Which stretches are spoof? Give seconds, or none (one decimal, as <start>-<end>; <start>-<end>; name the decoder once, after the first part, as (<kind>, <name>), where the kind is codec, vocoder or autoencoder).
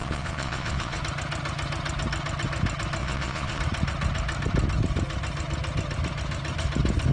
0.0-1.0 (vocoder, Vocos); 3.0-3.6